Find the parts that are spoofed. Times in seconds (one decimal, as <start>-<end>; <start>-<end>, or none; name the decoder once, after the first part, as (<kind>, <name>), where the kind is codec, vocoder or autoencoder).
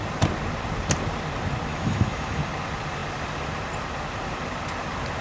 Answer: 1.7-2.4 (autoencoder, DAC-VAE)